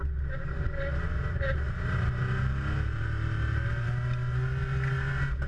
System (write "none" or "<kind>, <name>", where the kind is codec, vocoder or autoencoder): none